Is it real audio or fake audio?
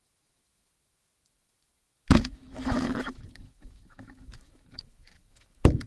fake